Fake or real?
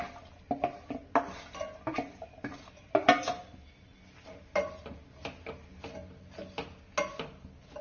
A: real